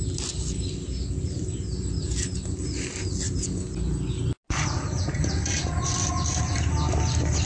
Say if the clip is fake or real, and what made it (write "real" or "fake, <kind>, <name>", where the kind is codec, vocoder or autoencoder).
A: real